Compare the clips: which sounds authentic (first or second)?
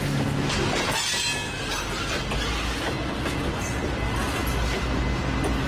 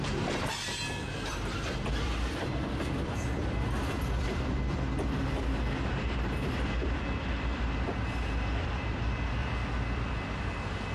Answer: first